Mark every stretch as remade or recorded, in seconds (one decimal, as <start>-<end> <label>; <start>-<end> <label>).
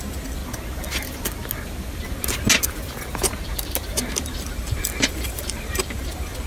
0.0-0.4 remade; 0.4-4.2 recorded; 4.2-6.5 remade